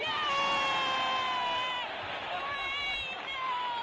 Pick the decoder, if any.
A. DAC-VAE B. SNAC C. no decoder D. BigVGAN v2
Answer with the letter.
C